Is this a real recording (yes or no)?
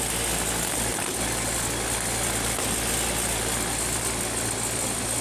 yes